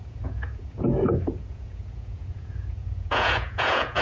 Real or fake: fake